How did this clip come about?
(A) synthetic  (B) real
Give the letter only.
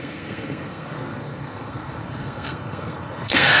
A